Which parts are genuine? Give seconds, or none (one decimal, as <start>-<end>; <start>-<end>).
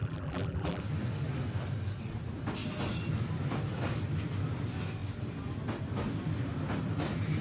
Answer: 0.8-7.4